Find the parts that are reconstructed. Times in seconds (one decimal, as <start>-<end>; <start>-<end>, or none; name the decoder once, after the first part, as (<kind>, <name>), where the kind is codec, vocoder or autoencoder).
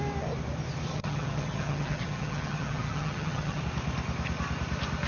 0.9-3.6 (vocoder, HiFi-GAN)